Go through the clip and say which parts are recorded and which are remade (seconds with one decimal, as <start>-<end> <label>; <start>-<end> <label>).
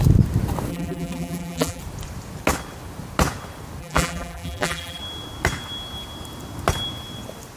0.0-0.7 recorded; 0.7-1.8 remade; 1.8-3.8 recorded; 3.8-5.0 remade; 5.0-7.6 recorded